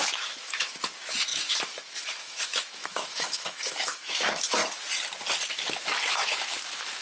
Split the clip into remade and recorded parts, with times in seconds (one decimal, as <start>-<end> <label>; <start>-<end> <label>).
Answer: 0.0-4.6 remade; 4.6-5.5 recorded; 5.5-7.0 remade